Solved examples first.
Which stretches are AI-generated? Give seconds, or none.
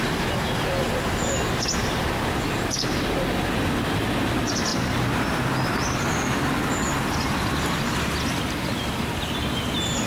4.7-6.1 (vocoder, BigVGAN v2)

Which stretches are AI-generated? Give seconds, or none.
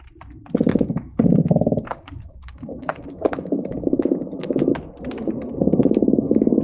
0.7-4.7 (codec, DAC); 5.8-6.6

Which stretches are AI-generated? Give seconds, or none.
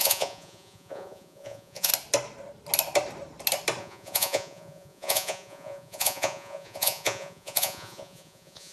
0.0-1.9 (vocoder, Vocos); 3.8-8.7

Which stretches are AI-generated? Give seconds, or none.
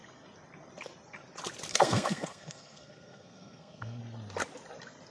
1.7-4.0 (codec, SNAC)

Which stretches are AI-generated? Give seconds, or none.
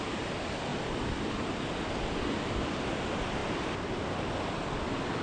none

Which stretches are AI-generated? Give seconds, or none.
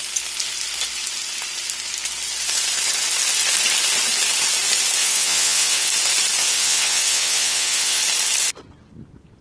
5.0-5.9 (vocoder, WaveNeXt); 6.4-8.0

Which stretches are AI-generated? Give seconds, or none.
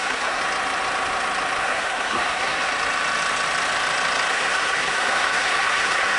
0.0-0.4 (codec, SNAC); 1.6-2.7; 4.3-6.2